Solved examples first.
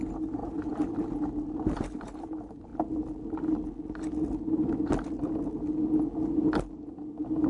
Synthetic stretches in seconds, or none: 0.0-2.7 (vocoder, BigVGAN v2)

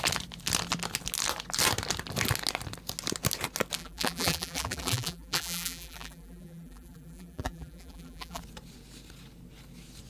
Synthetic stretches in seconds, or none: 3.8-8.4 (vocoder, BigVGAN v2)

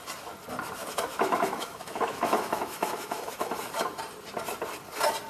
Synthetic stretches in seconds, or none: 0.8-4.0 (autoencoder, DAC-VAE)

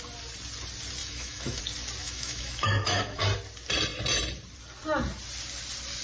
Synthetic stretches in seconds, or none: 1.0-1.6 (autoencoder, DAC-VAE); 2.0-3.2

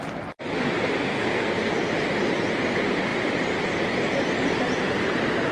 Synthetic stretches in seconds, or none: 1.1-1.7 (codec, SNAC)

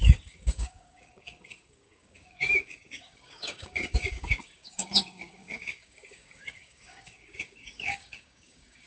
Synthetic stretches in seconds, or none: 0.0-8.9 (codec, DAC)

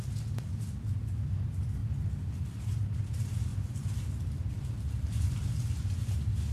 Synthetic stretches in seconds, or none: 1.8-2.8 (vocoder, BigVGAN v2); 3.5-5.5

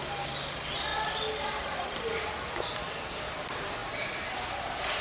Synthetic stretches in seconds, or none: 0.9-2.1 (vocoder, BigVGAN v2)